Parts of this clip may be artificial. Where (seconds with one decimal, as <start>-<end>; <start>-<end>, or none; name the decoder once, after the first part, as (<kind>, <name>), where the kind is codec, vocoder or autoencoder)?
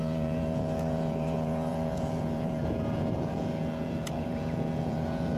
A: 0.0-5.4 (vocoder, Vocos)